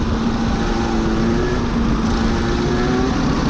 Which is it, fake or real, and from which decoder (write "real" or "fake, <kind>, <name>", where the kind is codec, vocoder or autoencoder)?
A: real